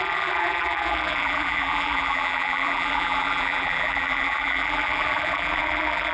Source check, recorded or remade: remade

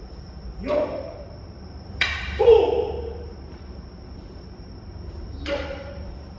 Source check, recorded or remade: remade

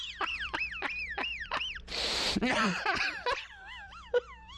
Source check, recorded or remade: remade